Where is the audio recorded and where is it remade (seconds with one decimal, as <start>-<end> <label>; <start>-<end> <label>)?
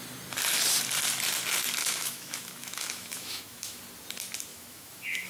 0.0-1.8 recorded; 1.8-3.8 remade; 3.8-4.5 recorded; 4.5-5.3 remade